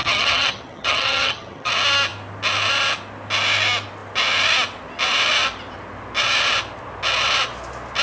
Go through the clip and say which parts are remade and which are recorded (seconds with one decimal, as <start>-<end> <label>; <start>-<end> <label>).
0.0-1.7 remade; 1.7-8.0 recorded